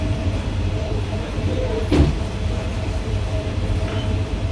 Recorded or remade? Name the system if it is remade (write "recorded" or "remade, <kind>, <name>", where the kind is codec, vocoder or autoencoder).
remade, vocoder, BigVGAN v2